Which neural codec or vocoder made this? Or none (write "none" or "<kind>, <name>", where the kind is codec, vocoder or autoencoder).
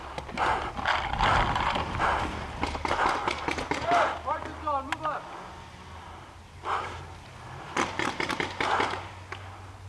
none